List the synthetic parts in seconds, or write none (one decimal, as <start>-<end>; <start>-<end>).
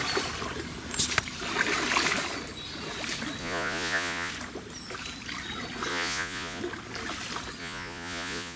3.4-4.3; 5.9-6.6; 7.6-8.6